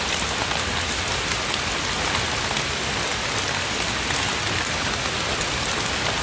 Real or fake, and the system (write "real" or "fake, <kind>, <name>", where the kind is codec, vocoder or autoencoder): real